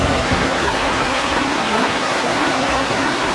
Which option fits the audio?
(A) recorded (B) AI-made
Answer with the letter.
B